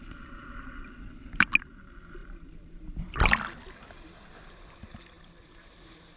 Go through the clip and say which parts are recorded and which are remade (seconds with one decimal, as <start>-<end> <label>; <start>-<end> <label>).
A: 0.0-6.2 recorded